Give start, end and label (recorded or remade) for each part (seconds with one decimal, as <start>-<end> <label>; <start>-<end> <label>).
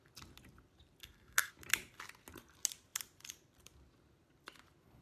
0.0-1.0 recorded; 1.0-1.5 remade; 1.5-5.0 recorded